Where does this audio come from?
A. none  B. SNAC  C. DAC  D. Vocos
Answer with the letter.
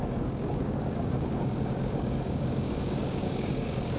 C